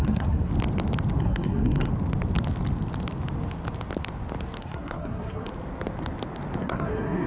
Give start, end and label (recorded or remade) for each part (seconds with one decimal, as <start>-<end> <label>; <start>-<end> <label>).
0.0-0.5 remade; 0.5-1.2 recorded; 1.2-1.9 remade; 1.9-4.6 recorded; 4.6-5.5 remade; 5.5-6.6 recorded; 6.6-7.3 remade